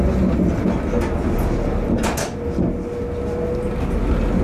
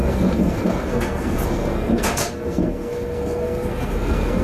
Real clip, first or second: first